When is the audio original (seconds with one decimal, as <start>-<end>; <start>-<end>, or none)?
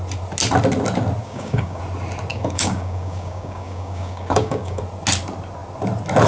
0.0-1.2; 1.8-2.3; 4.8-6.3